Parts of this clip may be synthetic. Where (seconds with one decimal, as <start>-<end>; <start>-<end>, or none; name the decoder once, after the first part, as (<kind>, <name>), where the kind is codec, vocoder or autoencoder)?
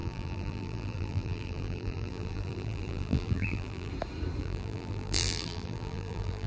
0.0-3.9 (vocoder, BigVGAN v2); 4.4-6.5